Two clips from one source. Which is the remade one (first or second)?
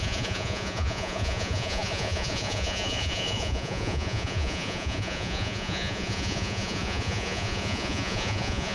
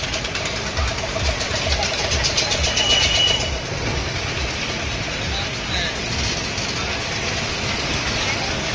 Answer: first